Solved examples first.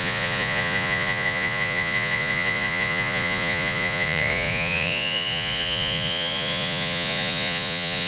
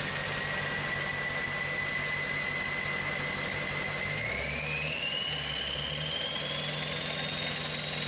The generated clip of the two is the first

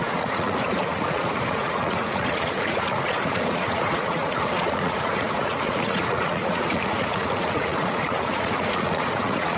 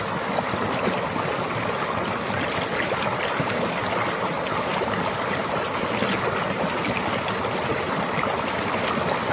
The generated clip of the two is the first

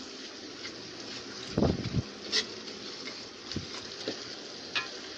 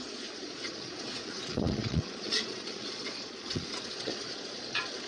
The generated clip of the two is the second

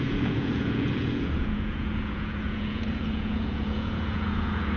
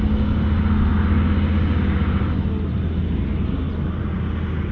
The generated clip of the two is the first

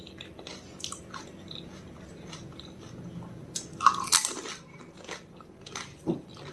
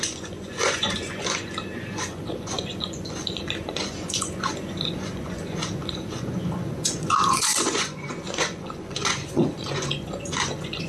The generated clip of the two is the second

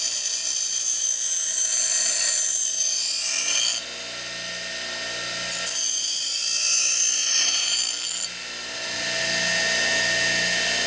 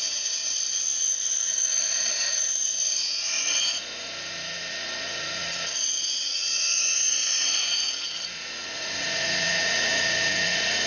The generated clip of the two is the second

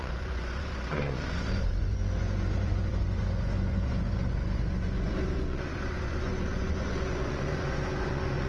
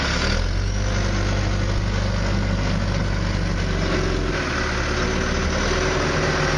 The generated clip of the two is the first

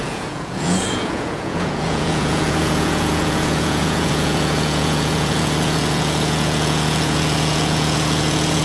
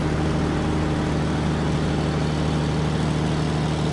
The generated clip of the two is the first